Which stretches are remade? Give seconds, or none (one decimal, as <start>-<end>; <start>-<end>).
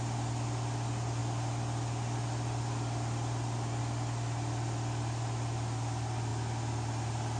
none